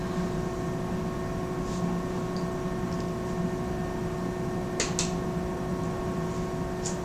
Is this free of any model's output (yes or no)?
yes